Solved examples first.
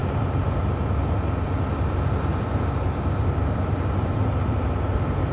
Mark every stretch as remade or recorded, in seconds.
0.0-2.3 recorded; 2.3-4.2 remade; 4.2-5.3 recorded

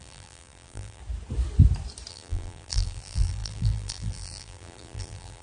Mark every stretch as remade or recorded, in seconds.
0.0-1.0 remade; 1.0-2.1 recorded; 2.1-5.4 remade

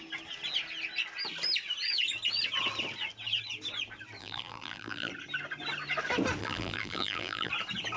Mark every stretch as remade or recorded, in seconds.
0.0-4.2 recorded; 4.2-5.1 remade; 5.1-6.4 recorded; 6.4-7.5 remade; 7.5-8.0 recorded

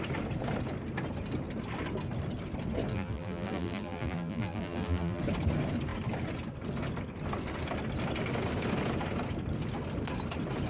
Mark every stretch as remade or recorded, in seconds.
0.0-2.9 recorded; 2.9-5.2 remade; 5.2-10.7 recorded

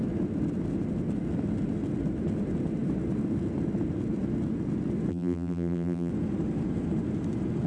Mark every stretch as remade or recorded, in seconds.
0.0-5.1 recorded; 5.1-6.1 remade; 6.1-7.7 recorded

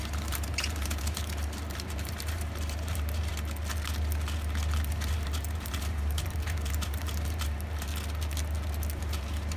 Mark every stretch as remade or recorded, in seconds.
0.0-3.3 remade; 3.3-4.9 recorded; 4.9-7.9 remade; 7.9-9.0 recorded; 9.0-9.6 remade